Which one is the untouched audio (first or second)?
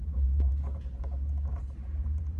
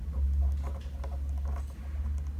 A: second